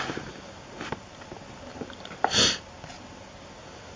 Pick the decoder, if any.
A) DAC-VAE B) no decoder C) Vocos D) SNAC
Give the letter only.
B